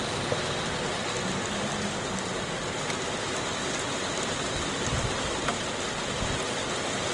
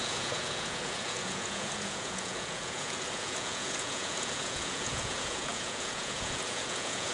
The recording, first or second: first